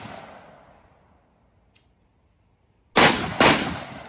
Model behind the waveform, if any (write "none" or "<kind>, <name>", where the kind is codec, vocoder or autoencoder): none